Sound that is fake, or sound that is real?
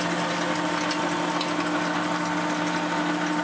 real